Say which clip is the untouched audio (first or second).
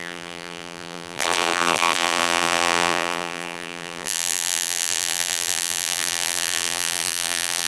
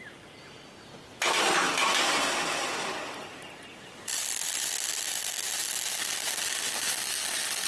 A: second